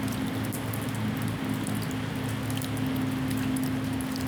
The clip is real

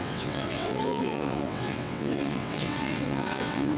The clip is fake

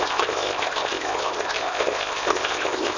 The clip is fake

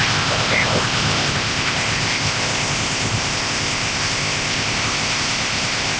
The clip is fake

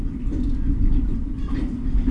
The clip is real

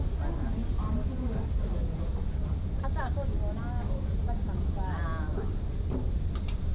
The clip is real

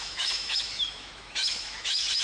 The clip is fake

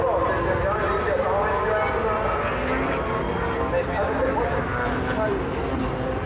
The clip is real